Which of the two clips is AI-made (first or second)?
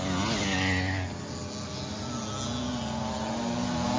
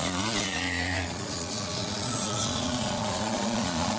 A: second